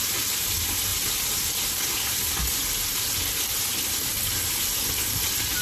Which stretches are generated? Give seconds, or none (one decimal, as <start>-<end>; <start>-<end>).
none